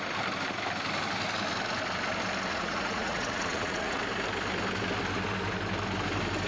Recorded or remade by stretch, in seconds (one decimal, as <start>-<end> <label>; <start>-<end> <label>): 0.0-2.5 recorded; 2.5-4.0 remade; 4.0-6.5 recorded